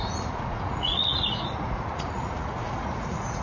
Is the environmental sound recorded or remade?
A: remade